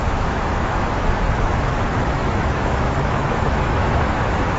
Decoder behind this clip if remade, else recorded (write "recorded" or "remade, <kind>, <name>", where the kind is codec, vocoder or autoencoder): remade, autoencoder, DAC-VAE